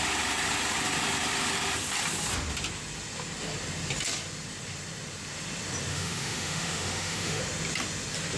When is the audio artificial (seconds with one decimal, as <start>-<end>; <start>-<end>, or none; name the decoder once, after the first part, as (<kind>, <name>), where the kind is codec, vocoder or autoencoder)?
5.9-7.4 (autoencoder, DAC-VAE)